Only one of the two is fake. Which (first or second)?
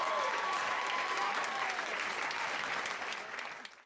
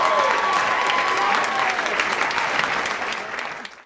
first